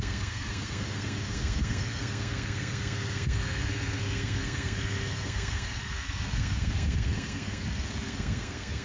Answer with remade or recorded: remade